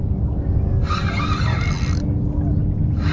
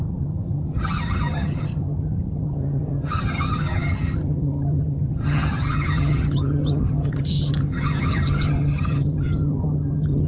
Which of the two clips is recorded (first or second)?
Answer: first